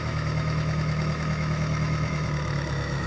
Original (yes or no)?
no